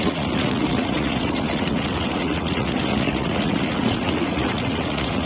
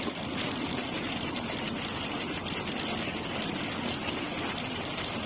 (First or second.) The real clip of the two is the second